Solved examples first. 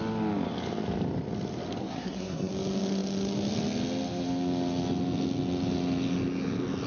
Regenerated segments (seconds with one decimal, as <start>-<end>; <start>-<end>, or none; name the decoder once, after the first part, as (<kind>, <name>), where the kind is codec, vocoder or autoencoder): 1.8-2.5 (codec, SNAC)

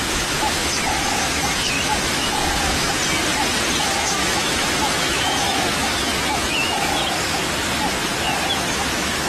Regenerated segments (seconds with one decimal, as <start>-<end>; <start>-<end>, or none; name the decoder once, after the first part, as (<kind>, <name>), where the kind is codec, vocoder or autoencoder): 0.0-3.0 (autoencoder, DAC-VAE); 3.8-7.0; 8.5-9.3

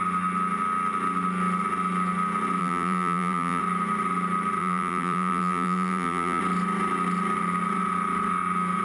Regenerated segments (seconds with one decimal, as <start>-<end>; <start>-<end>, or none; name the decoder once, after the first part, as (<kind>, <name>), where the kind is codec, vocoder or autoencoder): 2.6-3.6 (vocoder, BigVGAN v2); 4.6-6.4